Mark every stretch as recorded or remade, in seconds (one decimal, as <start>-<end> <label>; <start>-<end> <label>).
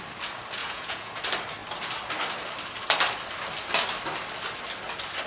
0.0-0.6 recorded; 0.6-1.2 remade; 1.2-5.3 recorded